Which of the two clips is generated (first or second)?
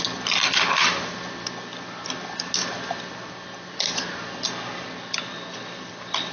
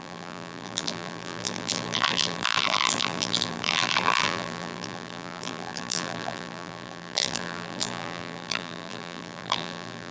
second